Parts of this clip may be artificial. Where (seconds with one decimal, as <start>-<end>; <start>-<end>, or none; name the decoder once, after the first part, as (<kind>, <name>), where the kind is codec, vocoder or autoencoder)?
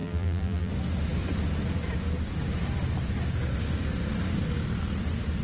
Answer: 0.0-0.7 (vocoder, BigVGAN v2)